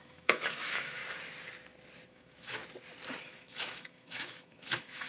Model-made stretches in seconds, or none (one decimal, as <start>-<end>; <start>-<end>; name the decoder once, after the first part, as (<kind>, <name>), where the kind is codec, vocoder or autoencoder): 0.0-1.0 (autoencoder, DAC-VAE); 2.1-2.6; 3.2-5.1